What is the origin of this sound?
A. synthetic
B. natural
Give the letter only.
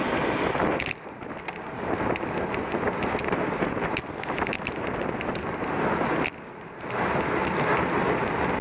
B